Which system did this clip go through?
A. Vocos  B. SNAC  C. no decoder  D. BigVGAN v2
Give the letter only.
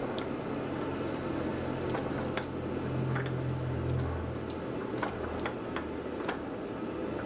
C